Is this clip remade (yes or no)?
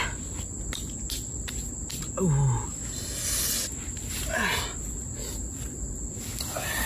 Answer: no